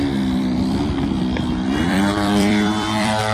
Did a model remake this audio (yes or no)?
yes